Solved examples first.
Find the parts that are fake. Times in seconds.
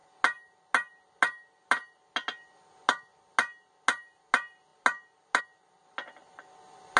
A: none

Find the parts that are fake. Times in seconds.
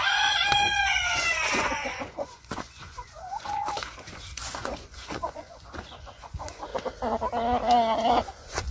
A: 0.0-6.7 (vocoder, Vocos); 8.1-8.7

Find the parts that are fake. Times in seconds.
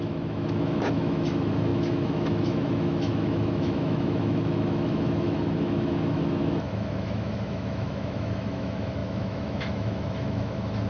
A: 0.0-10.9 (autoencoder, DAC-VAE)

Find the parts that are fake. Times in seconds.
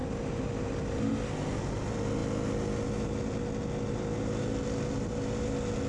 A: 0.0-1.1 (vocoder, BigVGAN v2)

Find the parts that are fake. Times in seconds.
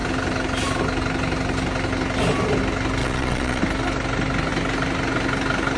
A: 3.0-3.6 (vocoder, Vocos)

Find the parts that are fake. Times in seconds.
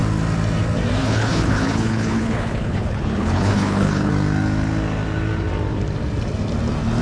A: 1.0-4.1 (codec, HILCodec)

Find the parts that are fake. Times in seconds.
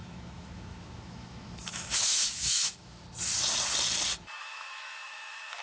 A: 0.0-3.0 (autoencoder, DAC-VAE); 4.4-5.6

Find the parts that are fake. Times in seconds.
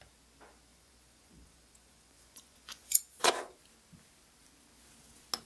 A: 0.7-3.3 (vocoder, Vocos)